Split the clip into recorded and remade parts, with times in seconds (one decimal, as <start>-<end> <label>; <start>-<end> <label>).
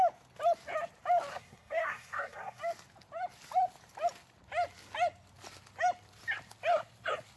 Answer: 0.0-1.3 recorded; 1.3-2.6 remade; 2.6-7.4 recorded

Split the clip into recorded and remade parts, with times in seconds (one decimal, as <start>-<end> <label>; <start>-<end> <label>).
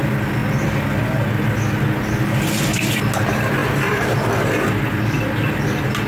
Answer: 0.0-6.1 recorded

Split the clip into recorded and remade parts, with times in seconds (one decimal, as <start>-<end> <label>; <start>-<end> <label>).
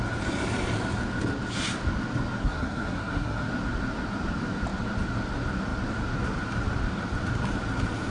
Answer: 0.0-2.4 recorded; 2.4-3.5 remade; 3.5-8.1 recorded